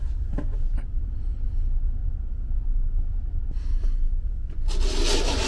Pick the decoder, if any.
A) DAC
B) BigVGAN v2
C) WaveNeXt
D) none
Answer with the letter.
D